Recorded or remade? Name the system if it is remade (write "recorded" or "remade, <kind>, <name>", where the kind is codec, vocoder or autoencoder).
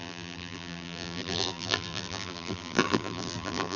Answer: remade, vocoder, BigVGAN v2